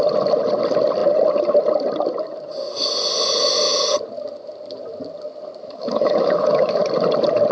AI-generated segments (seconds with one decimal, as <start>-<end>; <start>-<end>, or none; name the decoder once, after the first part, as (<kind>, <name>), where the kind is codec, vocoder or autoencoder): 5.6-6.8 (autoencoder, DAC-VAE)